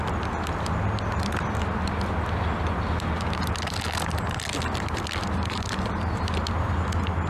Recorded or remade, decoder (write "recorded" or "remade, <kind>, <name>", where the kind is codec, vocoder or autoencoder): recorded